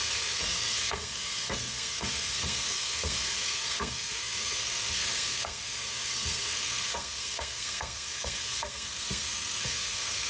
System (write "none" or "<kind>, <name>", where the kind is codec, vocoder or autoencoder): codec, SNAC